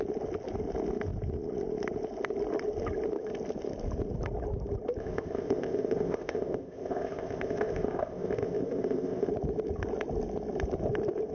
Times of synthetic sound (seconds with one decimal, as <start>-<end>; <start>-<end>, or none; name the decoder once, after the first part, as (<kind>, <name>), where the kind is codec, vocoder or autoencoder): 5.0-9.3 (codec, ZipCodec)